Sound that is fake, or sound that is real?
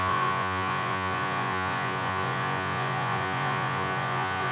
fake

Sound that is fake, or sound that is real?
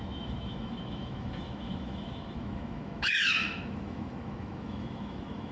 fake